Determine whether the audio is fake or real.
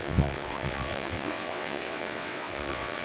fake